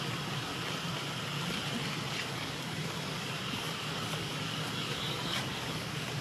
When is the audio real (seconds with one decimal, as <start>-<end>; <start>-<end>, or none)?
0.5-2.3